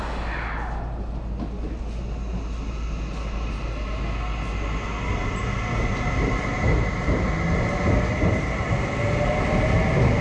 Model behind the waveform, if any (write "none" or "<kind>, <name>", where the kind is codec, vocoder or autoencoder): none